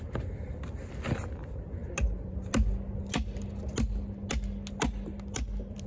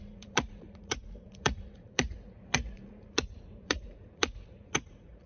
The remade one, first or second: second